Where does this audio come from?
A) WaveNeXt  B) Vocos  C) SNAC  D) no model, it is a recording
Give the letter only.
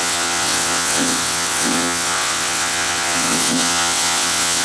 A